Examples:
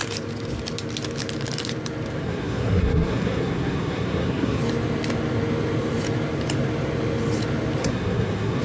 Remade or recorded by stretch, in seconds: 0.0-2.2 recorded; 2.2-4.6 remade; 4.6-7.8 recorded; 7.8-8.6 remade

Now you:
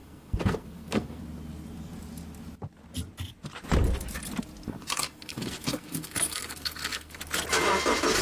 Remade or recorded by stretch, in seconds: 0.0-1.2 remade; 1.2-4.7 recorded; 4.7-7.2 remade; 7.2-8.2 recorded

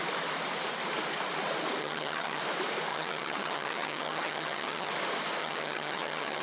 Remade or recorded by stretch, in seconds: 0.0-1.8 recorded; 1.8-2.4 remade; 2.4-2.9 recorded; 2.9-4.9 remade; 4.9-5.4 recorded; 5.4-6.4 remade

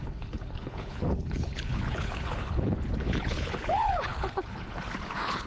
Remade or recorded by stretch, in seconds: 0.0-5.5 remade